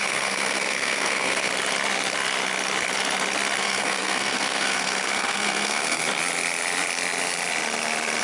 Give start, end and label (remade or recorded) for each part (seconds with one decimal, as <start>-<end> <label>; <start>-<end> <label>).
0.0-1.5 remade; 1.5-3.6 recorded; 3.6-6.0 remade; 6.0-8.2 recorded